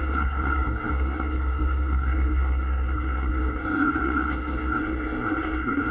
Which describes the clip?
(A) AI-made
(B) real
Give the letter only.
A